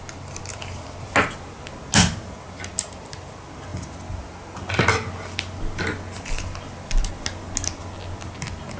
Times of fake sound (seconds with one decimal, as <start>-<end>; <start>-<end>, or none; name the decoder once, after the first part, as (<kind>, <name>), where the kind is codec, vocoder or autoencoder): none